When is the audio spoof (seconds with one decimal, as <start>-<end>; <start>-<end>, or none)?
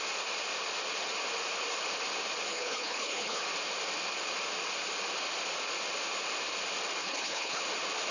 2.5-3.4; 7.0-7.6